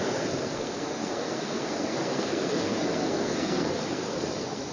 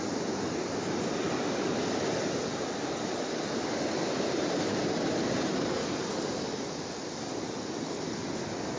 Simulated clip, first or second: first